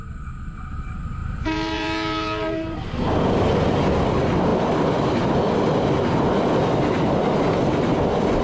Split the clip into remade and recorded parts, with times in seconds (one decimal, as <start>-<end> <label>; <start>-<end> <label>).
0.0-1.2 recorded; 1.2-2.8 remade; 2.8-8.4 recorded